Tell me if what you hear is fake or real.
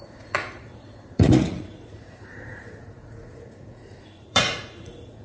fake